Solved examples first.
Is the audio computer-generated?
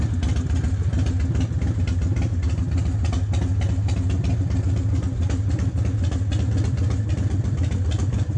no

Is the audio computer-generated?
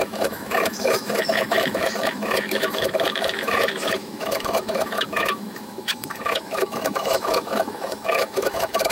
yes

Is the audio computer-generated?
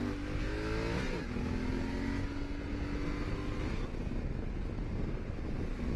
no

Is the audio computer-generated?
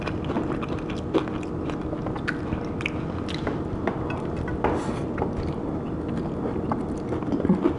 no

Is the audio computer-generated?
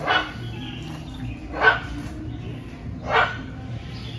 no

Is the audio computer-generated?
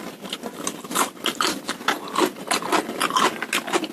no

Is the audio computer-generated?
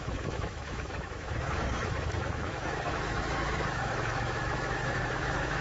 yes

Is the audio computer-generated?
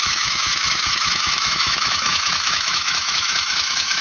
yes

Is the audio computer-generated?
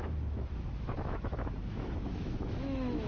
yes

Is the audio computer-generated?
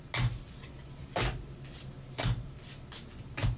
no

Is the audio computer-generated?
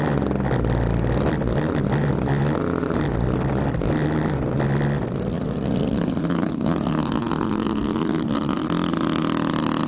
no